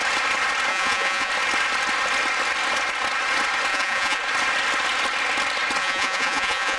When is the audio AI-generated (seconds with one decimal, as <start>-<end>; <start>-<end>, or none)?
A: 0.7-1.3; 3.7-4.2; 5.8-6.8